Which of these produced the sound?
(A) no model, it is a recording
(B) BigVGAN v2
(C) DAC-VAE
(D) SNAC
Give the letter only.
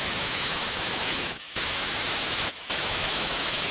C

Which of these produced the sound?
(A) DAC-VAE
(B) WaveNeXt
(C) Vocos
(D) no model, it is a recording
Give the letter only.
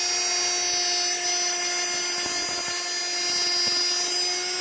D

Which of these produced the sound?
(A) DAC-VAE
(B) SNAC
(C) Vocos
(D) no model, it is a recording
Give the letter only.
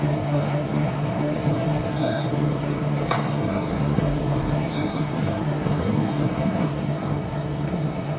B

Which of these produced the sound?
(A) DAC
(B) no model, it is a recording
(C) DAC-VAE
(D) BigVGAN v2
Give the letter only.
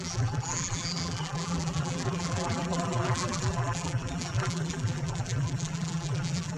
D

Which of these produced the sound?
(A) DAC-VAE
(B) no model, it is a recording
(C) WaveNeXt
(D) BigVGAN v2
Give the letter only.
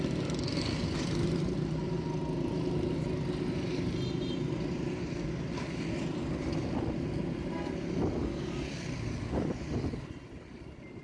B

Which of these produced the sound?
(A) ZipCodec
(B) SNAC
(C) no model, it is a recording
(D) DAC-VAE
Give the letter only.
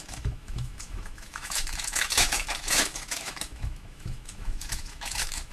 D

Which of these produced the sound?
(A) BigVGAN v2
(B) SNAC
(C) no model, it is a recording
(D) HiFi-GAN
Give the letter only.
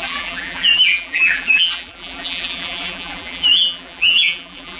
A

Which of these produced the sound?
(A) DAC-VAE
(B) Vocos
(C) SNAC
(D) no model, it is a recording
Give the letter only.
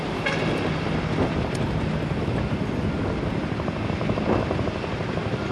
D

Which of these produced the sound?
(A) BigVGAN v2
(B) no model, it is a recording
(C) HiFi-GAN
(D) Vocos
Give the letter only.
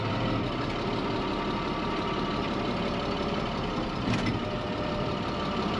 A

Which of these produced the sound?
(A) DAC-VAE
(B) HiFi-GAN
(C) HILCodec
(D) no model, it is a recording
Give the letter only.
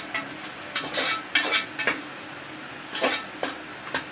D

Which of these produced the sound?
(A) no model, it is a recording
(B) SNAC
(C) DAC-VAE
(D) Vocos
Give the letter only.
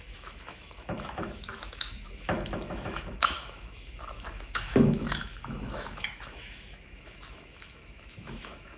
C